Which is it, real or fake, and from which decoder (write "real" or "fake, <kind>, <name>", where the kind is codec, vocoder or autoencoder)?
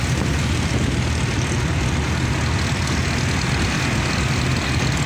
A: real